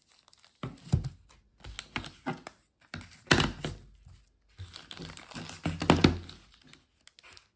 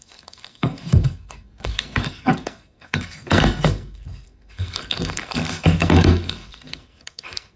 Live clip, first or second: first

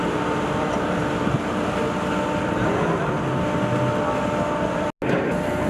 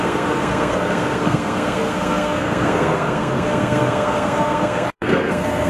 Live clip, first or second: first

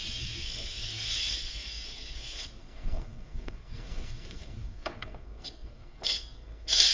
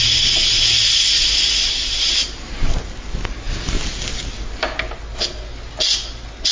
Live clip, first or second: second